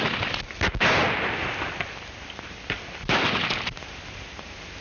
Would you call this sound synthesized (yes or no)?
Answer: no